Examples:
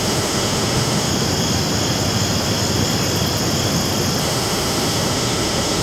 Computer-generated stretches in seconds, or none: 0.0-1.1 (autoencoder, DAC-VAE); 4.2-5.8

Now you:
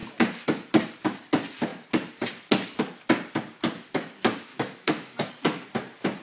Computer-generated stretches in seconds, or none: 4.5-5.3 (autoencoder, DAC-VAE)

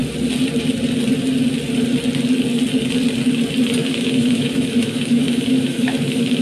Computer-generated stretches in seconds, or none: 3.8-6.4 (autoencoder, DAC-VAE)

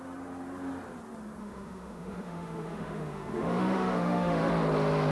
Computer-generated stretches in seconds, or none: 1.4-4.5 (autoencoder, DAC-VAE)

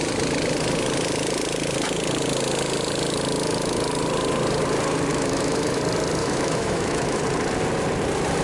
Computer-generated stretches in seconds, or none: 5.1-5.8 (autoencoder, DAC-VAE); 6.2-7.2

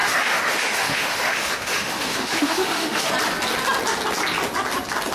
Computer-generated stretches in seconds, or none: 0.0-3.1 (autoencoder, DAC-VAE)